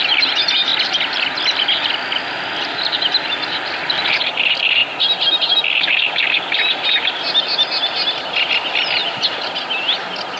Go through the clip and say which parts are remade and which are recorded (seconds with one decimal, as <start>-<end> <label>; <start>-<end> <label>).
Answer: 0.0-10.4 recorded